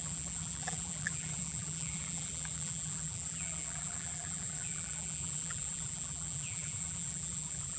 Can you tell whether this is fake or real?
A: fake